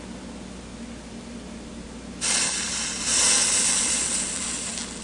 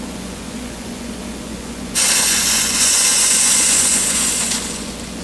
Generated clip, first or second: second